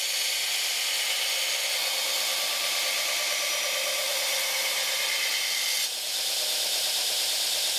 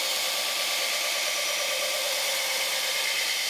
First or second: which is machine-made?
second